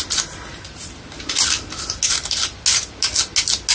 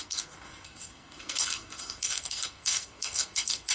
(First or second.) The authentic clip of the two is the first